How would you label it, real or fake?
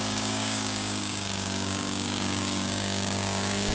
fake